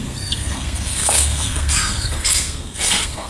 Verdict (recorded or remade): remade